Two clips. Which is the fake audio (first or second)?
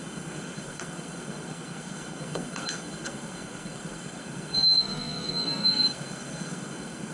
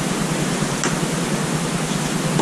first